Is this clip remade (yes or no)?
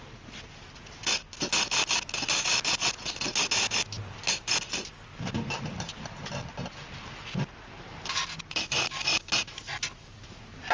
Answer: no